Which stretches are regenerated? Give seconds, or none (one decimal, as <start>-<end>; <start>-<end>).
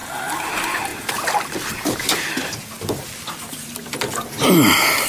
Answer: 3.5-4.3